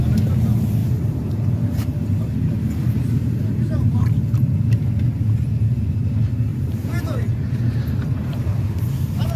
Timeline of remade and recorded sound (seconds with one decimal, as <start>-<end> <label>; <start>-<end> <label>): 0.0-0.8 recorded; 0.8-4.1 remade; 4.1-6.5 recorded; 6.5-9.4 remade